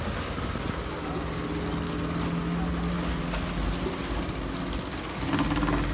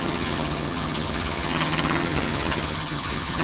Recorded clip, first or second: first